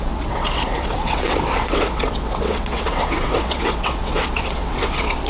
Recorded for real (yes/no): no